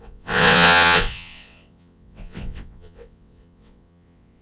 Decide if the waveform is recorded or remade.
remade